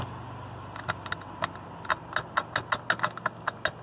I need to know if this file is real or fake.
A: real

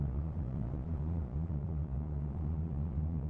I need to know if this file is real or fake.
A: fake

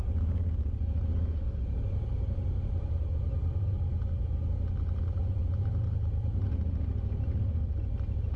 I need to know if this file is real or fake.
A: real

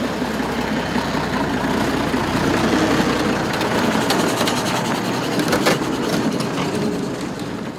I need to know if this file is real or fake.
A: real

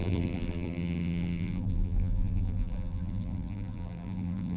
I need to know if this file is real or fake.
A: fake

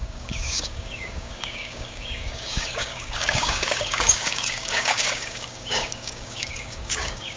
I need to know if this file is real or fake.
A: fake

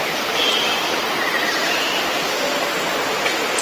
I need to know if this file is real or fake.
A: real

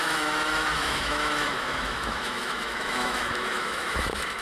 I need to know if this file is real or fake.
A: fake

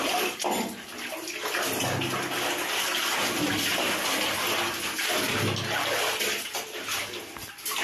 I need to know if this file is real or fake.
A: real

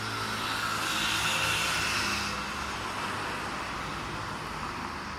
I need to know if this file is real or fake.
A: real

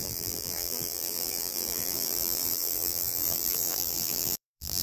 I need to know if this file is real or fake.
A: fake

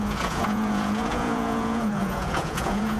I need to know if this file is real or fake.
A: fake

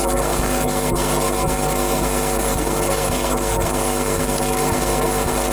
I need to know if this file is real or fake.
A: fake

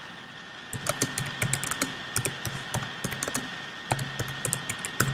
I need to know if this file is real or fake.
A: real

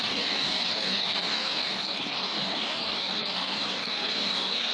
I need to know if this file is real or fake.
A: fake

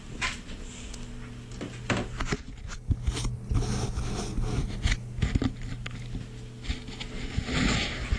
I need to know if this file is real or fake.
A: real